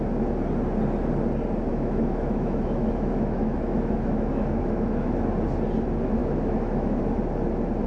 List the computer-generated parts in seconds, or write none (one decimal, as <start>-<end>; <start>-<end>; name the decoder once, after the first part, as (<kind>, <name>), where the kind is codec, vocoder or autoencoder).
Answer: 1.7-5.1 (autoencoder, DAC-VAE); 6.2-7.0